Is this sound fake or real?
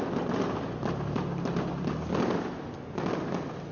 real